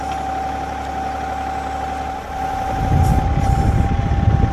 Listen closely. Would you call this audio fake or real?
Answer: real